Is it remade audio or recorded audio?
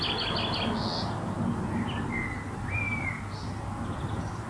recorded